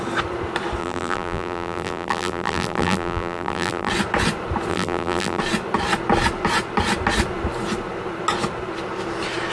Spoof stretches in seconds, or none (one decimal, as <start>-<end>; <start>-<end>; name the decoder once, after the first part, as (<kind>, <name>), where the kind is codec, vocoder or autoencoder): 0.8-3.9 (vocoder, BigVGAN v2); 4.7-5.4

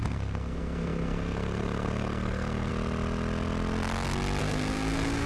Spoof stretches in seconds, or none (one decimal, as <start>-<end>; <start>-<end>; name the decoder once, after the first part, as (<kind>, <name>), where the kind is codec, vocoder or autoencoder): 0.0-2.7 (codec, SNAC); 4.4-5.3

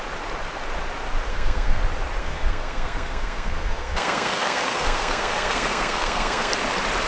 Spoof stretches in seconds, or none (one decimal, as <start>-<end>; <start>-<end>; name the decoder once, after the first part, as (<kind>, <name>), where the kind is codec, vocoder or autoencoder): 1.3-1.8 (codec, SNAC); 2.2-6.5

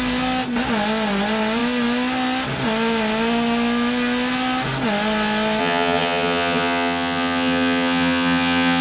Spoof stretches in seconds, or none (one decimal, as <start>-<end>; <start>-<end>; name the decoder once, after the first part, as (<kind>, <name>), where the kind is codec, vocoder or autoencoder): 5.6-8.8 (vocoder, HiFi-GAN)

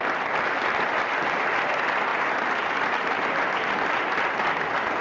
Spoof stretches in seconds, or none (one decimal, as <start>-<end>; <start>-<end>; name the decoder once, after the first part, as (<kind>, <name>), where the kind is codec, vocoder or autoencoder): none